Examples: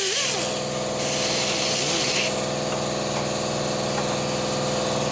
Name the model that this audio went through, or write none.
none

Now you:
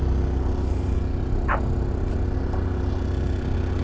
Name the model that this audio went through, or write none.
none